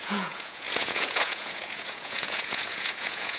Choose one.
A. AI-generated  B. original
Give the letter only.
A